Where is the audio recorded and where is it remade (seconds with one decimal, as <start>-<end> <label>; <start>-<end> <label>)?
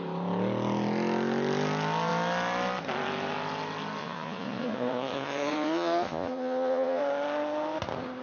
0.0-4.0 recorded; 4.0-7.0 remade; 7.0-8.2 recorded